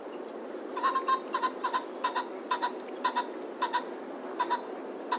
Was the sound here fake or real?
real